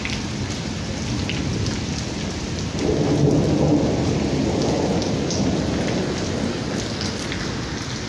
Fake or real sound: real